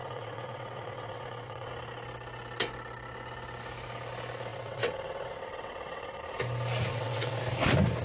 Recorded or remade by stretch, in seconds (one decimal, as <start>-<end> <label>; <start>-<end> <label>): 0.0-1.7 remade; 1.7-4.5 recorded; 4.5-6.2 remade; 6.2-6.9 recorded; 6.9-7.4 remade; 7.4-8.0 recorded